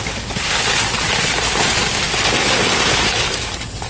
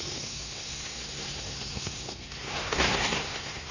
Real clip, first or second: first